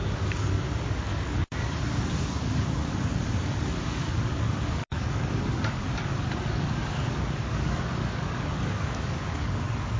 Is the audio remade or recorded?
remade